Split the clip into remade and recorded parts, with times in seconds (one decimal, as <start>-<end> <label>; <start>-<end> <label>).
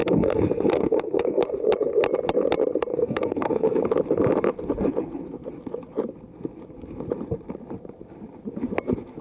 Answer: 0.0-1.4 remade; 1.4-2.9 recorded; 2.9-3.8 remade; 3.8-9.2 recorded